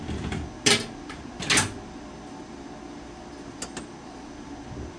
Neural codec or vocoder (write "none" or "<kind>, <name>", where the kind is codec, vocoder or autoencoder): none